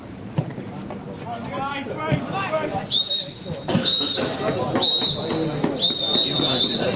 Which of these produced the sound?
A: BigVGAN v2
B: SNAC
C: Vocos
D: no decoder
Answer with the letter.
D